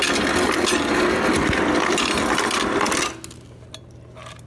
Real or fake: real